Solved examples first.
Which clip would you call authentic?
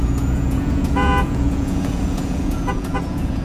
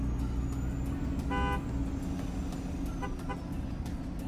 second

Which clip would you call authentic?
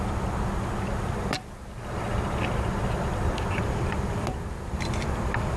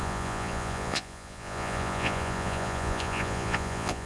first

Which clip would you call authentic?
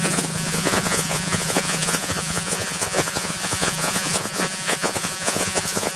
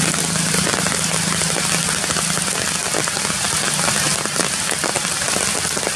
second